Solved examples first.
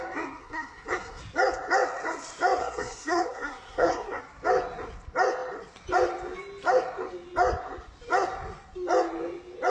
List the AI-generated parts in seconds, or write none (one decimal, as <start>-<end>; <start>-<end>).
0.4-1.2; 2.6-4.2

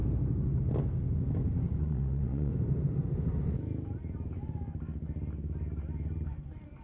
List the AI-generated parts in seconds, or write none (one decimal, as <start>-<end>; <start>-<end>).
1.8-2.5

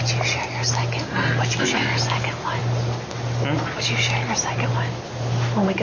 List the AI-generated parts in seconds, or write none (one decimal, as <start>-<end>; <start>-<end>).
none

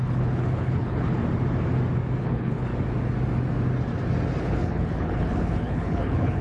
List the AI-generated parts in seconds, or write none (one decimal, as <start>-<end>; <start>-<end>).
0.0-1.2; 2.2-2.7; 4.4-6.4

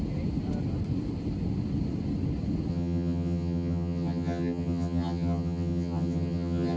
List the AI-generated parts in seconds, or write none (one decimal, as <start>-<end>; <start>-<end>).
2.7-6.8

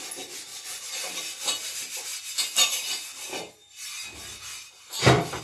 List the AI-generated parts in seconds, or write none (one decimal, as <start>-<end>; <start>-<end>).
0.5-1.1